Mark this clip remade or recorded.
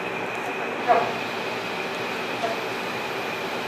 recorded